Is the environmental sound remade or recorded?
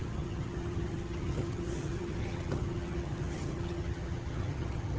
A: remade